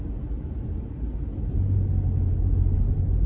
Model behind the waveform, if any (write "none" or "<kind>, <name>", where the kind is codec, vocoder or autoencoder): none